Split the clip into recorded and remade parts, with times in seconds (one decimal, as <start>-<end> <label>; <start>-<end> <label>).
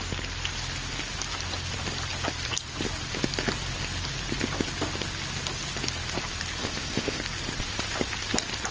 0.0-6.6 recorded; 6.6-7.2 remade; 7.2-8.7 recorded